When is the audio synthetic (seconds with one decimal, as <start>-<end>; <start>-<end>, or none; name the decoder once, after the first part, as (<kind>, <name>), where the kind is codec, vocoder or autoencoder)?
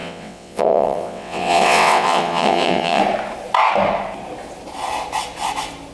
0.0-3.0 (vocoder, WaveNeXt)